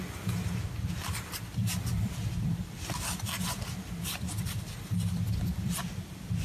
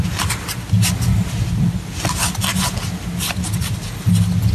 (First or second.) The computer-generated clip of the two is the first